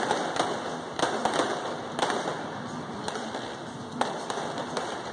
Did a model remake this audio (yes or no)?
no